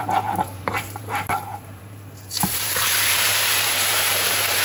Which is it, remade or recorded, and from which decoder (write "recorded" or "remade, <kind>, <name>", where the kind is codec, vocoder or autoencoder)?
remade, vocoder, BigVGAN v2